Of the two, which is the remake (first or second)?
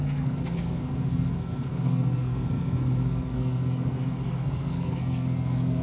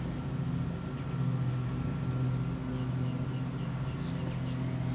first